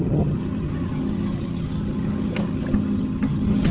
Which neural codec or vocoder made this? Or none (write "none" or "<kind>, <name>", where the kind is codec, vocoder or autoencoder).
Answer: vocoder, HiFi-GAN